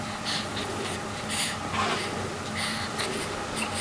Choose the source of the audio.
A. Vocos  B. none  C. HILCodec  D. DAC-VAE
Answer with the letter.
B